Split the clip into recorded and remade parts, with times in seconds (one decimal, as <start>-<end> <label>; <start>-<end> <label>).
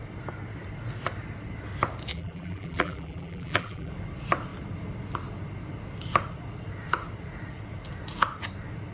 0.0-2.1 recorded; 2.1-3.9 remade; 3.9-8.9 recorded